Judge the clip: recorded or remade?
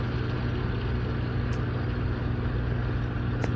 recorded